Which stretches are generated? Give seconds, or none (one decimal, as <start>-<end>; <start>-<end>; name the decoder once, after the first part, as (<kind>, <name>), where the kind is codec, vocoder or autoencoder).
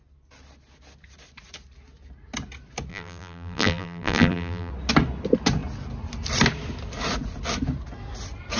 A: 2.9-4.7 (vocoder, BigVGAN v2)